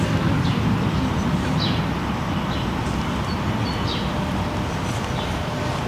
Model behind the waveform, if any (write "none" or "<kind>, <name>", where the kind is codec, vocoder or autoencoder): none